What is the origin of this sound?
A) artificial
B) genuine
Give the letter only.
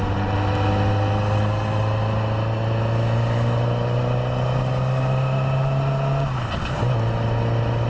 B